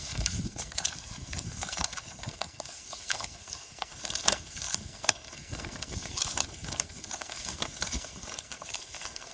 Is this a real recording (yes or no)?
no